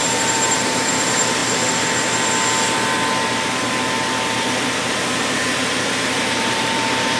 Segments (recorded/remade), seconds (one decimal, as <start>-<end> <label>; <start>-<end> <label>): 0.0-1.4 remade; 1.4-5.0 recorded; 5.0-7.2 remade